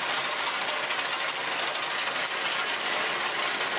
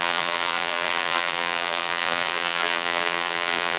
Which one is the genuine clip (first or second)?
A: first